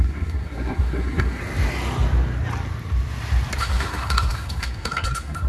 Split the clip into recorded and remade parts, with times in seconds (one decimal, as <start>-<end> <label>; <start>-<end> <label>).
0.0-1.4 remade; 1.4-3.6 recorded; 3.6-5.5 remade